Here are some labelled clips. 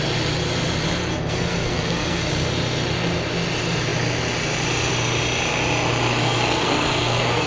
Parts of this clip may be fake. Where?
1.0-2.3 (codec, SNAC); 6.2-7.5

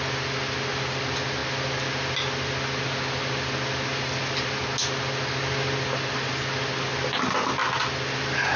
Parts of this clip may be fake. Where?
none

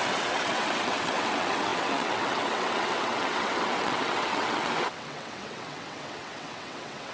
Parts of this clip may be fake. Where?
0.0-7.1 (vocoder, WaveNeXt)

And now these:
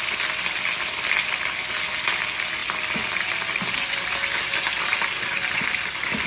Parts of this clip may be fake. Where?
none